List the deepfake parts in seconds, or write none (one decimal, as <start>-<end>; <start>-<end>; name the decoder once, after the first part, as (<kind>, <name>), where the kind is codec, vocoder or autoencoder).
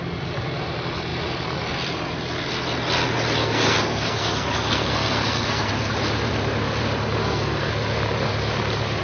3.4-5.7 (codec, SNAC); 7.2-7.7